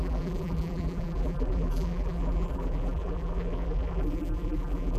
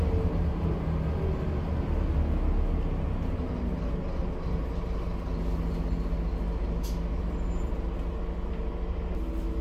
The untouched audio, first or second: second